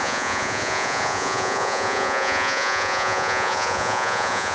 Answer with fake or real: fake